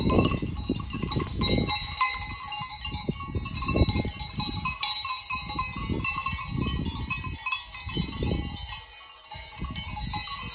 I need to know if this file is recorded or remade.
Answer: recorded